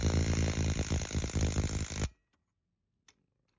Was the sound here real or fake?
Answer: real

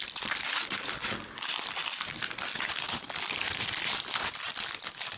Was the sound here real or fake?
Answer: fake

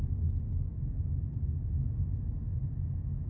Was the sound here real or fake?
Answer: real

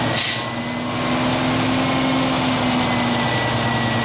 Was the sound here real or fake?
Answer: real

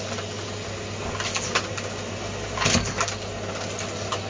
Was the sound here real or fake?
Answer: real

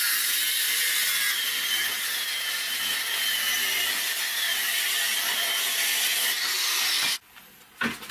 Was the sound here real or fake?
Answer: real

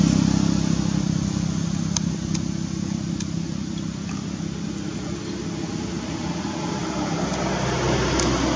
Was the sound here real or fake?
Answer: real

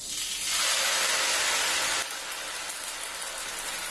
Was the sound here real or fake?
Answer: real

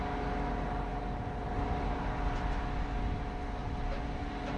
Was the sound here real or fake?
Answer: real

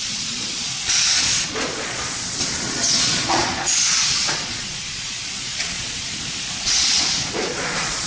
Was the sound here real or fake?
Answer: fake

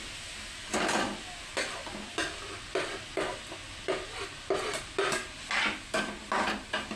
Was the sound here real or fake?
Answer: real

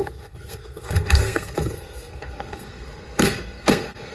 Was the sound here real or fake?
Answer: fake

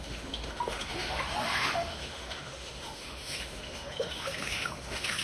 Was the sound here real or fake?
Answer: fake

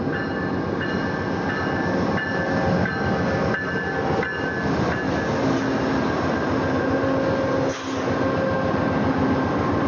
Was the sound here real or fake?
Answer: real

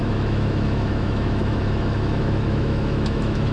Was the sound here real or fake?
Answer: fake